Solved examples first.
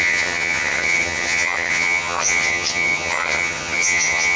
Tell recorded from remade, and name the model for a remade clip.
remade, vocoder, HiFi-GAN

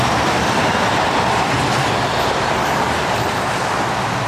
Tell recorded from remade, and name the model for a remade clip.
recorded